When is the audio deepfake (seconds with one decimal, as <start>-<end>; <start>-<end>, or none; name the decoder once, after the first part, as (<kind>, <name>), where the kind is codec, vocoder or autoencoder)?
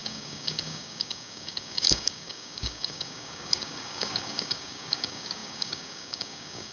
0.0-6.7 (codec, DAC)